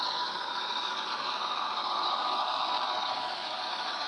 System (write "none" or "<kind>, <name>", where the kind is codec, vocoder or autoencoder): codec, DAC